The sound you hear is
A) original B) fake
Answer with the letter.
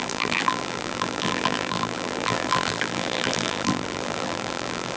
B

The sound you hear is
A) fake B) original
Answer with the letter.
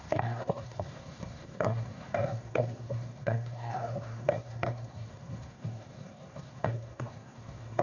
A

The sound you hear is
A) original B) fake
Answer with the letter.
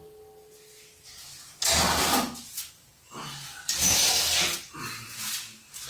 A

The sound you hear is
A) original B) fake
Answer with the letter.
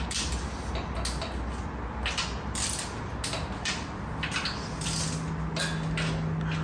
A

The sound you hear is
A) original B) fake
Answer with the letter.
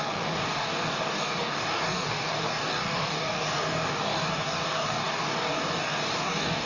B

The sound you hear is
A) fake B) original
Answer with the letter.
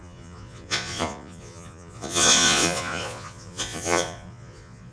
A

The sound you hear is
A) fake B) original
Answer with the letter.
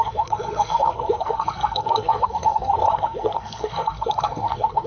A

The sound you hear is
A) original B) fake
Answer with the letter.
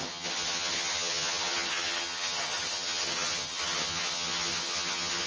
B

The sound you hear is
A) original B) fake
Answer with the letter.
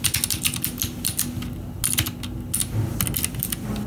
A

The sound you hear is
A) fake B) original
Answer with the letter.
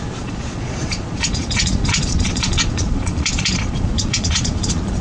A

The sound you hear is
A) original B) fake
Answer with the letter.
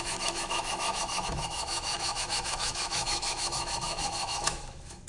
B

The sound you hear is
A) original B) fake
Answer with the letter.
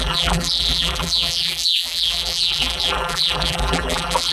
B